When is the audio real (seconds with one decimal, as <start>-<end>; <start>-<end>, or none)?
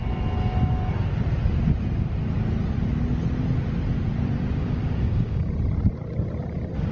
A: 0.0-4.6; 5.5-6.9